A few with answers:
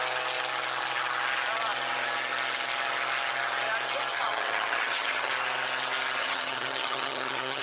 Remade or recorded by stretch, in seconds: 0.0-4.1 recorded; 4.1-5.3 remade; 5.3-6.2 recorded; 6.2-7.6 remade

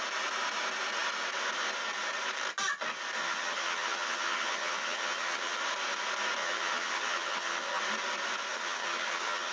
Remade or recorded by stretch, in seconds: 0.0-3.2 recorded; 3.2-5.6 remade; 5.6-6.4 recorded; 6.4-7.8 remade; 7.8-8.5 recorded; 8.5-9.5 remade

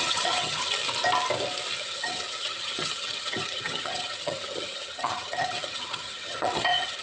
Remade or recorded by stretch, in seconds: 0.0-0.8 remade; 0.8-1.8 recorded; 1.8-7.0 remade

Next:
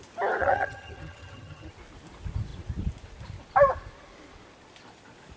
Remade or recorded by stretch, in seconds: 0.0-0.4 recorded; 0.4-1.7 remade; 1.7-5.4 recorded

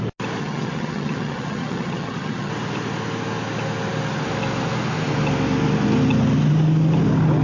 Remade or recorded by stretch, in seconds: 0.0-0.4 recorded; 0.4-2.5 remade; 2.5-7.4 recorded

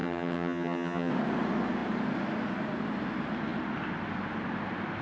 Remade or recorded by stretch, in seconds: 0.0-1.1 remade; 1.1-5.0 recorded

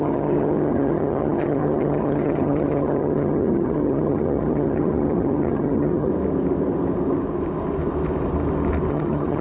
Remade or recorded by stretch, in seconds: 0.0-6.1 remade; 6.1-8.9 recorded; 8.9-9.4 remade